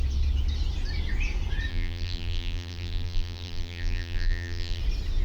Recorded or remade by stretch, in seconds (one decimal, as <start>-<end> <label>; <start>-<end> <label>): 0.0-1.7 recorded; 1.7-4.8 remade; 4.8-5.2 recorded